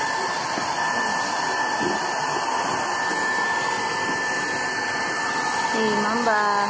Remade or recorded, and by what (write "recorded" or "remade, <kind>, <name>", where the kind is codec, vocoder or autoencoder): recorded